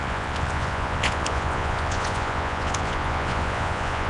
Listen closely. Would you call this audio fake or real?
fake